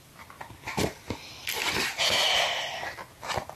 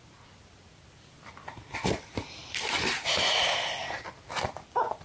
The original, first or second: first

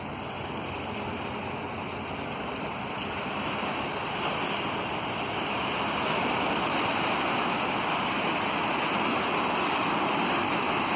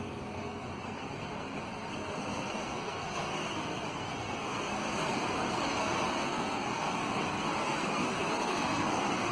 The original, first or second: first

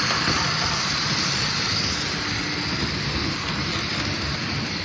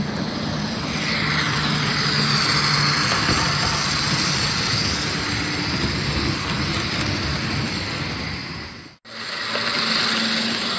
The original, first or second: second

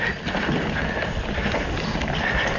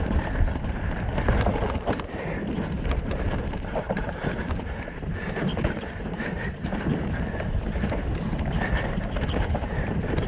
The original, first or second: first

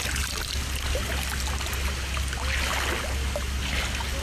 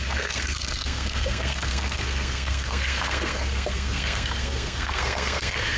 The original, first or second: first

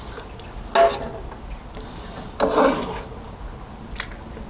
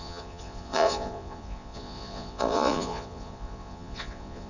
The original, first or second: first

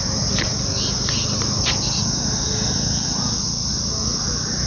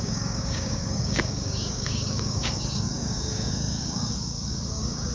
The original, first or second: first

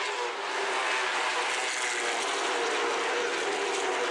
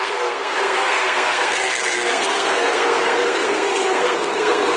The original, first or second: first